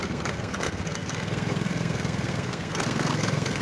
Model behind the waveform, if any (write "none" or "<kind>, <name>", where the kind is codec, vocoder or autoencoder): codec, SNAC